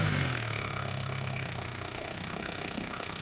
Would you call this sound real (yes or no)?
no